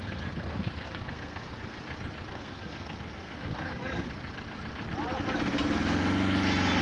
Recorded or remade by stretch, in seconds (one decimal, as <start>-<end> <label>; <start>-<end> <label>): 0.0-1.8 remade; 1.8-2.3 recorded; 2.3-4.1 remade; 4.1-6.8 recorded